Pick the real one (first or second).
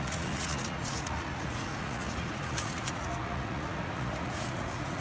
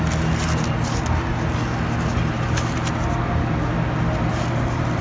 second